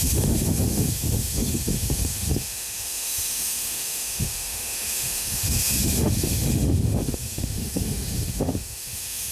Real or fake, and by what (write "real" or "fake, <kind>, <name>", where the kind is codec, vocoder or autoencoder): fake, autoencoder, DAC-VAE